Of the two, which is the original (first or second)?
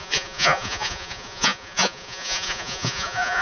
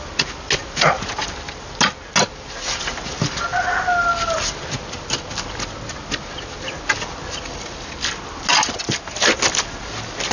second